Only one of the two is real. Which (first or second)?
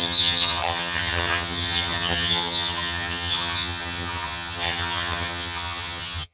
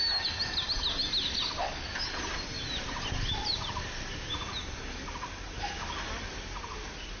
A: second